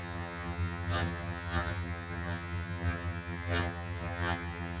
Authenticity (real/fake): fake